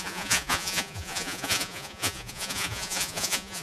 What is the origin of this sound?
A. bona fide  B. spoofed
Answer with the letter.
B